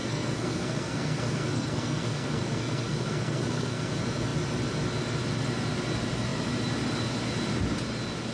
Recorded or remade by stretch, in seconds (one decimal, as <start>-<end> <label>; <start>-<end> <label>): 0.0-3.9 remade; 3.9-8.3 recorded

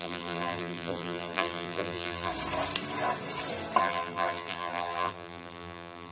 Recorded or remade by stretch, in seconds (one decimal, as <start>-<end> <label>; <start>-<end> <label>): 0.0-2.3 remade; 2.3-3.8 recorded; 3.8-6.1 remade

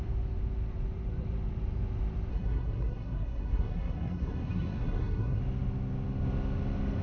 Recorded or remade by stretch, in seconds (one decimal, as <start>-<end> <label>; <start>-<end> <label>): 0.0-2.3 recorded; 2.3-5.4 remade; 5.4-7.0 recorded

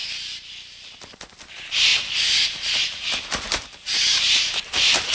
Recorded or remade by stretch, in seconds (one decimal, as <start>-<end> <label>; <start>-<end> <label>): 0.0-5.1 remade

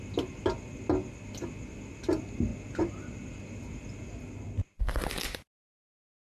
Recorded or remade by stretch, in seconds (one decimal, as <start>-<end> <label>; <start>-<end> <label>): 0.0-6.4 recorded